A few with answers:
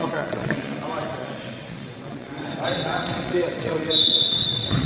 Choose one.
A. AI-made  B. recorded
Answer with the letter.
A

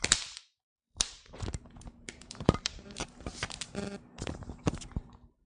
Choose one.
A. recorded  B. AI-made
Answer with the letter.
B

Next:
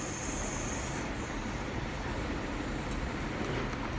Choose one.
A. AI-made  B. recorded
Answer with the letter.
B